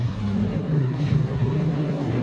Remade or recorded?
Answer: remade